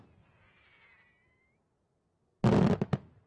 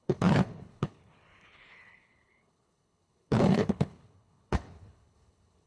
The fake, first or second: second